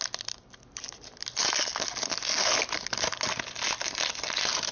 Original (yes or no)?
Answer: yes